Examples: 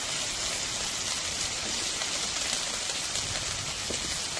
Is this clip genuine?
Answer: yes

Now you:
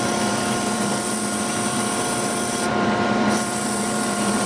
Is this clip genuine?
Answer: no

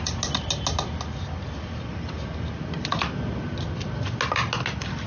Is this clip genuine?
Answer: yes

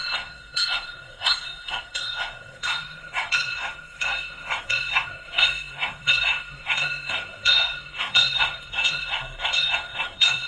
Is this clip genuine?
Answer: no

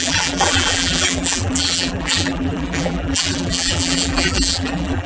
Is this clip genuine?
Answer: no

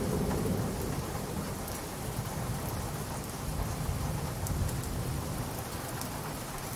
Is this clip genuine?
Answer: yes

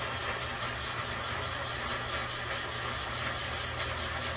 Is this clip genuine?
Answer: yes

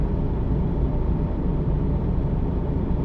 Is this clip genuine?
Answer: no